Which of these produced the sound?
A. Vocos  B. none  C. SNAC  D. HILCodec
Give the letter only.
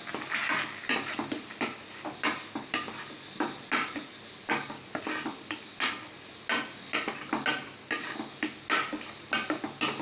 B